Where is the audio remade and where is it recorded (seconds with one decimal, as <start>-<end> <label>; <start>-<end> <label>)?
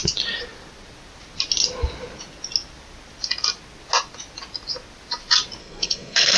0.0-5.6 recorded; 5.6-6.4 remade